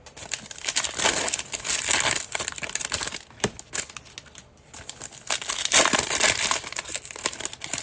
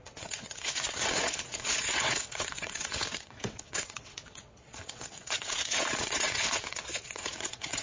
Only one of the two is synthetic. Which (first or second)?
second